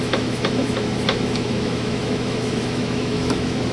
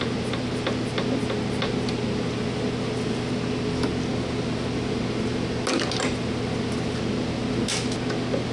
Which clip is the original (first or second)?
second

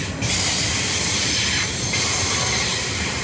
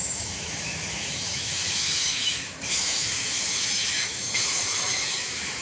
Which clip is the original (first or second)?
first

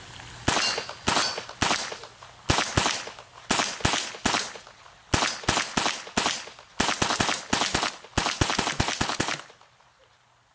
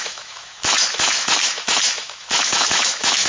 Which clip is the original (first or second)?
first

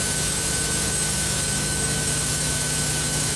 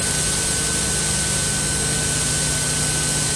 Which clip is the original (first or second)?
second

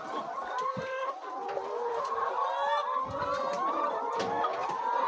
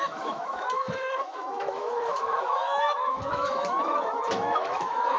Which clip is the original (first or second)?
first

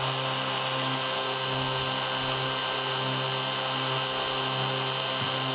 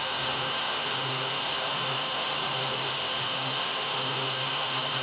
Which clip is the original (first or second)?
first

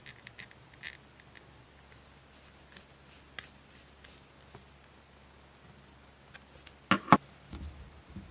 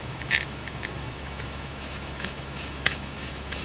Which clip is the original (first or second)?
first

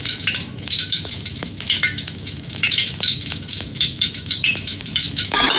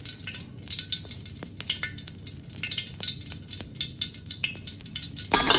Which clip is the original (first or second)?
second